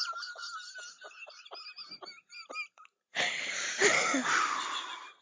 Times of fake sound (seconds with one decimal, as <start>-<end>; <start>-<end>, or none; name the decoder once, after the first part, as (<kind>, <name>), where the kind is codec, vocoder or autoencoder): 1.8-5.2 (vocoder, BigVGAN v2)